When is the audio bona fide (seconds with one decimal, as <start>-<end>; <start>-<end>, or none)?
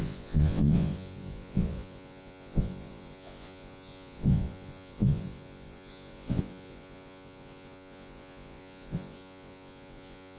none